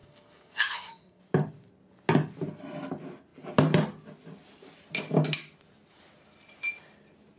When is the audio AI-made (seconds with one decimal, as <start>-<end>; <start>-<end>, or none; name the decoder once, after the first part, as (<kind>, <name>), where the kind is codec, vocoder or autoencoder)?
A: 0.0-1.2 (codec, SNAC)